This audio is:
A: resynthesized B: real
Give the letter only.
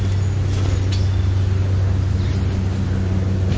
B